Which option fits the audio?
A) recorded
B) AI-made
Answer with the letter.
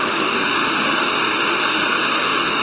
B